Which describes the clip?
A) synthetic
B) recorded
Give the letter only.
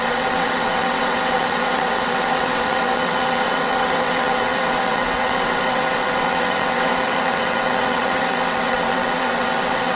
A